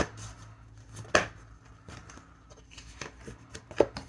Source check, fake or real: real